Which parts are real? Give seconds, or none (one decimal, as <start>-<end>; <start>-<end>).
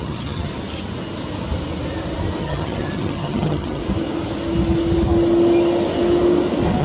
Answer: 0.5-2.4; 3.8-6.8